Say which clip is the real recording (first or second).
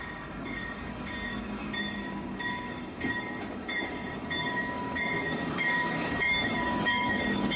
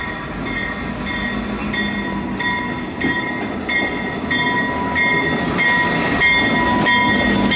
second